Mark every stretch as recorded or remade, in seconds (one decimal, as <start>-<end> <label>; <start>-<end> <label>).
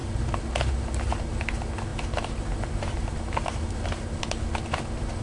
0.0-5.2 recorded